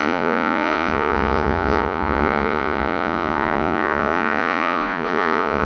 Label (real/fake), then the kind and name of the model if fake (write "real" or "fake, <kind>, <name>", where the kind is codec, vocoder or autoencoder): fake, vocoder, Vocos